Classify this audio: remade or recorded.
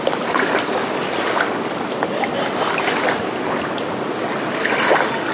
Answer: recorded